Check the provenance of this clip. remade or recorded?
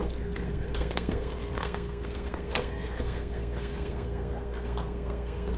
remade